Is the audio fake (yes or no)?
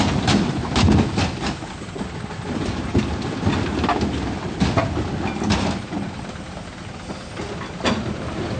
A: no